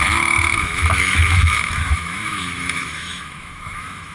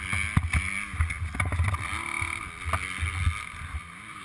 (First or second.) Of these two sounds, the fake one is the first